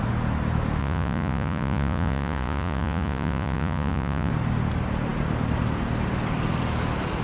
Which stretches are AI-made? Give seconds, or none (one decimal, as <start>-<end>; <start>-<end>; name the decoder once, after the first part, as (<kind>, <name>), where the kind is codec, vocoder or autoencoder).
0.8-4.3 (vocoder, Vocos)